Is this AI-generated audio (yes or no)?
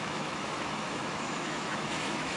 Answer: yes